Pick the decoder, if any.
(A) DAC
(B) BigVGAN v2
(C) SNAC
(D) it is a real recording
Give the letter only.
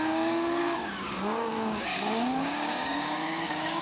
A